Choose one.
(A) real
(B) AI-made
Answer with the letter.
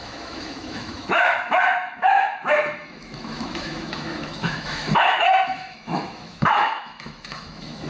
B